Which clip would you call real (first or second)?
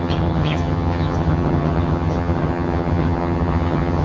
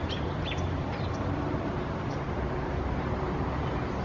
second